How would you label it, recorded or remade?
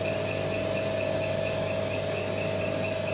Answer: recorded